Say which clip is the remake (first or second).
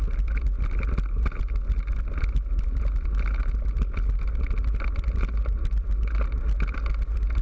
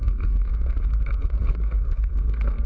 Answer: second